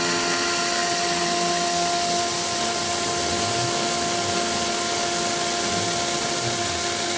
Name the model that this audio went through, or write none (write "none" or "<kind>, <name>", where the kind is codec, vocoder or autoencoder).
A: none